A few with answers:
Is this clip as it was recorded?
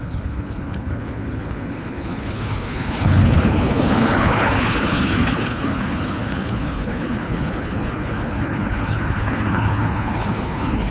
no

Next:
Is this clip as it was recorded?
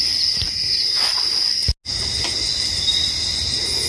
yes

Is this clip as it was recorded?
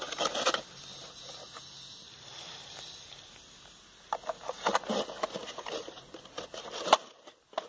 yes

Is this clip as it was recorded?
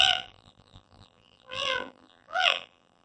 no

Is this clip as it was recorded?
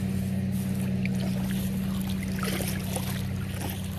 yes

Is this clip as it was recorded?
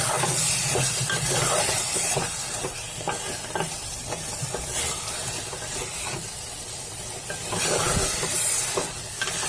yes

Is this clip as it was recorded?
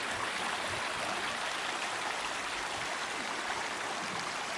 yes